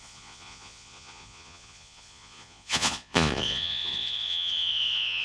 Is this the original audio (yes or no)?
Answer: no